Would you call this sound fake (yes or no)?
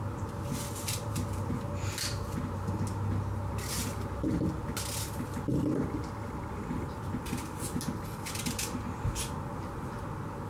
no